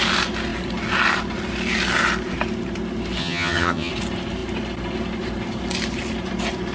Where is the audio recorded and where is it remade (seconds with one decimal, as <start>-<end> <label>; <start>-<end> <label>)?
0.0-3.2 recorded; 3.2-3.9 remade; 3.9-6.7 recorded

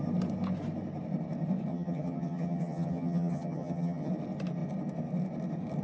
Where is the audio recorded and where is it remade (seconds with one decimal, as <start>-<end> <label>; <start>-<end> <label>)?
0.0-1.7 recorded; 1.7-4.1 remade; 4.1-5.8 recorded